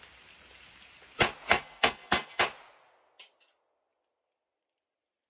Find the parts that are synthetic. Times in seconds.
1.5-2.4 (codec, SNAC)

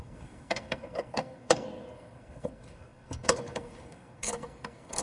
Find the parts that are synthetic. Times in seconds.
0.0-5.0 (codec, SNAC)

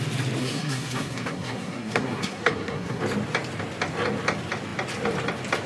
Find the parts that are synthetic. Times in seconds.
0.4-3.0 (codec, SNAC)

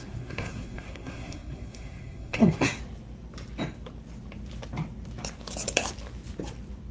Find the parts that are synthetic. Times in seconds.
0.0-2.8 (codec, SNAC)

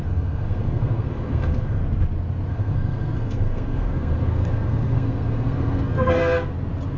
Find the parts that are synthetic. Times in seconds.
0.0-1.8 (codec, SNAC); 2.5-6.2